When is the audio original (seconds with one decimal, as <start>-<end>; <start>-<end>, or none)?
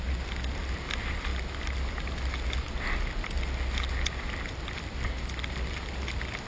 0.0-6.5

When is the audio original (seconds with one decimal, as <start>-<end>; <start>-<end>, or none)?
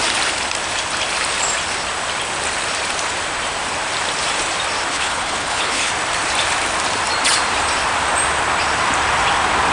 0.0-4.9; 5.9-9.7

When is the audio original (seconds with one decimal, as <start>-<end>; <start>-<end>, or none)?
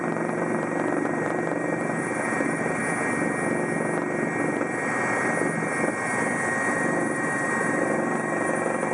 2.8-6.7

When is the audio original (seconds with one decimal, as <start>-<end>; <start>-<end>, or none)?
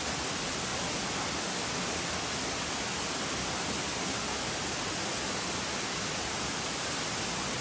0.0-7.6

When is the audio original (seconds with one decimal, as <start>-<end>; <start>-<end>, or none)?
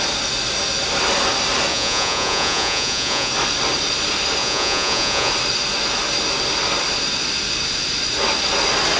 0.0-1.7; 3.3-4.4; 5.3-9.0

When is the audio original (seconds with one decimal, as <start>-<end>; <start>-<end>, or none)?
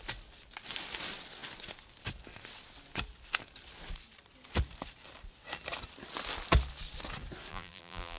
0.0-7.5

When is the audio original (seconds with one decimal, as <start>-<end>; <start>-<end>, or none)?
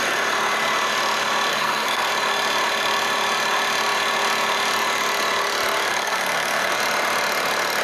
0.0-1.5; 2.1-5.9; 6.7-7.8